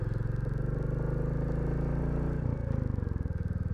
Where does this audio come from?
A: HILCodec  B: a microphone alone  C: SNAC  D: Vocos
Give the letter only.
B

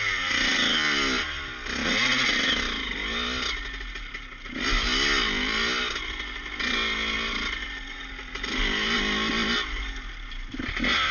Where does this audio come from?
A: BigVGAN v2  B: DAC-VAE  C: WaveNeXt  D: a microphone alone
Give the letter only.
D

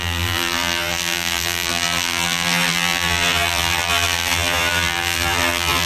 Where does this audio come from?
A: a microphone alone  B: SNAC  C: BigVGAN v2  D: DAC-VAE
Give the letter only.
C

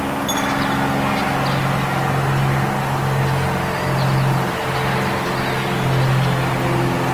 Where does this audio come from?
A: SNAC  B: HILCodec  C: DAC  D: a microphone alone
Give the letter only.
D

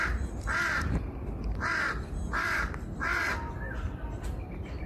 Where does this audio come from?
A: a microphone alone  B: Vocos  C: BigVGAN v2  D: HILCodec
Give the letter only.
C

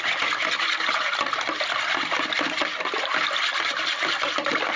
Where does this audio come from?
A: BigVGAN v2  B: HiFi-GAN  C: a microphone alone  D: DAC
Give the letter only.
C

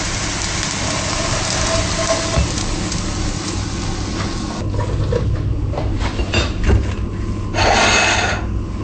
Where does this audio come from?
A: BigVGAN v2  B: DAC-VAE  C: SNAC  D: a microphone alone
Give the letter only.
D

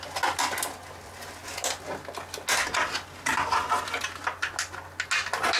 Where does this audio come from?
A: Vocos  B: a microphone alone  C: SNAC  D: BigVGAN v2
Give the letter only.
B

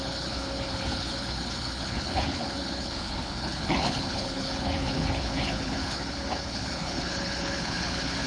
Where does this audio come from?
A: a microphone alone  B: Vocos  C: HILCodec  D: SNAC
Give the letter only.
C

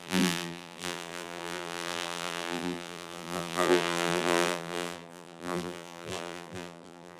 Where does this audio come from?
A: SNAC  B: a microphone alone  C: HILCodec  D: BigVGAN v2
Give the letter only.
D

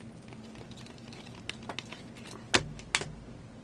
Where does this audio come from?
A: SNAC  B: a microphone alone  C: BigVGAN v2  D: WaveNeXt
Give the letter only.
B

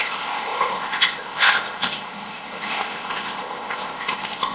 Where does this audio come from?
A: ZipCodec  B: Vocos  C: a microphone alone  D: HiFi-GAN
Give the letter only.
A